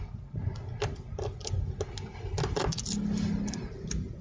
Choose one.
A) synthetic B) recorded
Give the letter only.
B